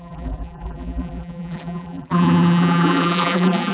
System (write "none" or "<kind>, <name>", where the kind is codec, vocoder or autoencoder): vocoder, BigVGAN v2